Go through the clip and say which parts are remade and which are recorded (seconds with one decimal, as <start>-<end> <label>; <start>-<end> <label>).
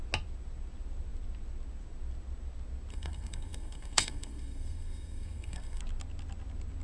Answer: 0.0-2.9 recorded; 2.9-5.8 remade; 5.8-6.8 recorded